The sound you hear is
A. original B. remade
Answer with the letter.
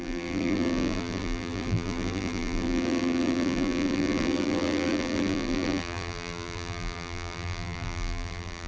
B